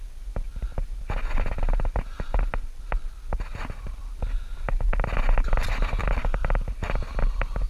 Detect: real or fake real